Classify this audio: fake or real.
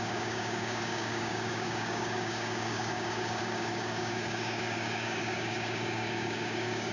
fake